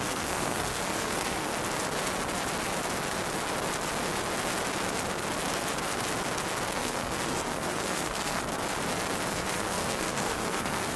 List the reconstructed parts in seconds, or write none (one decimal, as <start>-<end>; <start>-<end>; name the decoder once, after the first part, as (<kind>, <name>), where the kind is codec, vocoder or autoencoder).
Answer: 0.0-1.5 (codec, SNAC); 6.7-8.4; 9.3-11.0